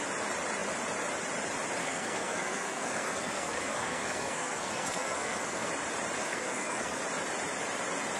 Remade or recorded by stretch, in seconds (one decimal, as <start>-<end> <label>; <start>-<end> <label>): 0.0-1.8 recorded; 1.8-5.7 remade; 5.7-6.2 recorded; 6.2-7.0 remade; 7.0-8.2 recorded